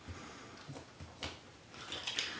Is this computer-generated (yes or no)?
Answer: no